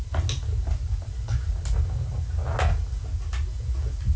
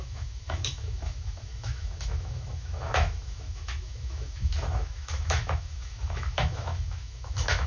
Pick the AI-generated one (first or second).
second